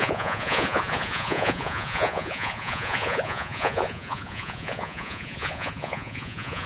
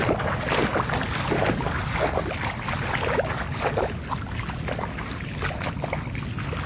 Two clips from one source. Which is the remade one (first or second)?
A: first